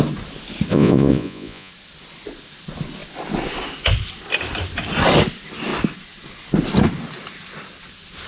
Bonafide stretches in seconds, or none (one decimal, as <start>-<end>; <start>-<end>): 0.0-0.7; 1.7-8.3